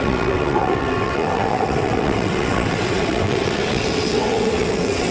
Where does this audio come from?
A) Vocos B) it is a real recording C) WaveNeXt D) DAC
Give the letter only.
C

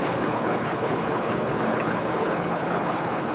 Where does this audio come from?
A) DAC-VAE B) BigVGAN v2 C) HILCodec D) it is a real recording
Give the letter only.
C